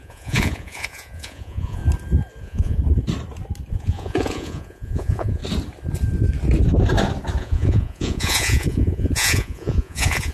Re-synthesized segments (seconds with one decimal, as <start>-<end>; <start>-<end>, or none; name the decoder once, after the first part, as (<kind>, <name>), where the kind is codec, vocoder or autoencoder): 0.0-1.8 (vocoder, Vocos); 2.4-2.8; 3.7-5.4; 7.4-10.3